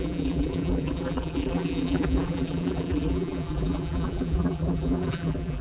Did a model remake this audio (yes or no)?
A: yes